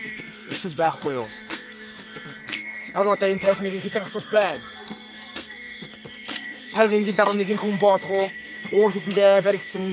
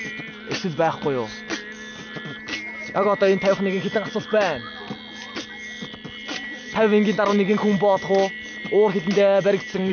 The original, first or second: second